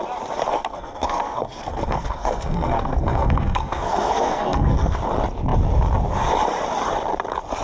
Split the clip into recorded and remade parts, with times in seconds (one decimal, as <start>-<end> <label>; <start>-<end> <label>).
0.0-0.5 recorded; 0.5-5.0 remade; 5.0-7.6 recorded